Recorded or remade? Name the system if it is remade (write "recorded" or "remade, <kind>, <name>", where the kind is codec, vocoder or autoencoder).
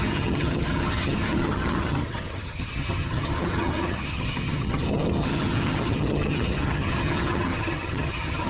remade, vocoder, HiFi-GAN